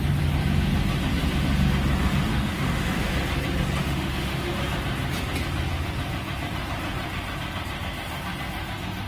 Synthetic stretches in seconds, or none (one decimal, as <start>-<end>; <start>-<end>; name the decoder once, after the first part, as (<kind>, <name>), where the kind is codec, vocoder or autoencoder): 2.3-3.1 (autoencoder, DAC-VAE); 3.8-4.5

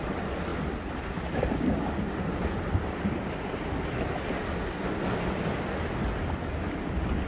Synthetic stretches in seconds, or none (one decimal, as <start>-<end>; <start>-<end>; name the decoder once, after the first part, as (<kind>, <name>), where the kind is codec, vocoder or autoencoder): none

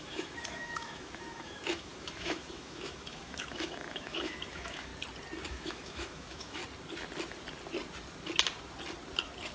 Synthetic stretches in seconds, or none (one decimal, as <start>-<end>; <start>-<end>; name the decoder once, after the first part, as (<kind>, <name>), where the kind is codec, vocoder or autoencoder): 0.0-4.9 (autoencoder, DAC-VAE); 5.5-6.6

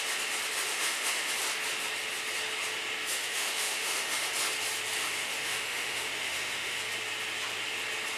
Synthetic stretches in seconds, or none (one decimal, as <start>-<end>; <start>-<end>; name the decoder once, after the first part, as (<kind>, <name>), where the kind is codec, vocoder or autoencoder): 0.7-1.3 (autoencoder, DAC-VAE); 3.1-4.3; 5.0-6.8

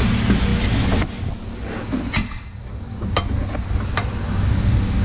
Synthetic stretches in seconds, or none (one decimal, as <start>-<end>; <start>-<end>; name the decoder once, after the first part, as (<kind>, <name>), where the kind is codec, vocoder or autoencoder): none

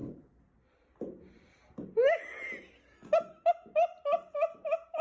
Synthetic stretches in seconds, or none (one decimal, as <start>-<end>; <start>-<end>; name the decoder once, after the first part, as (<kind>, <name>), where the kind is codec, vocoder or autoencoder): none

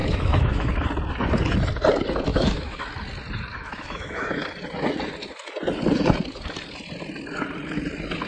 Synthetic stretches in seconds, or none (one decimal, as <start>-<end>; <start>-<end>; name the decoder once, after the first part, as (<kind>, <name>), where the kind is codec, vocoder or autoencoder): 0.0-0.7 (autoencoder, DAC-VAE); 2.3-2.8; 3.5-4.4

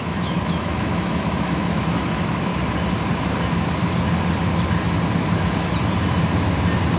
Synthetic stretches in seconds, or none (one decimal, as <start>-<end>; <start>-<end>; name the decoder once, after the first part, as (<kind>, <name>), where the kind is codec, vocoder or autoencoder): 0.0-2.5 (autoencoder, DAC-VAE)